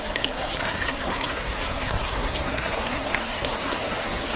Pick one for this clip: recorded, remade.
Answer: remade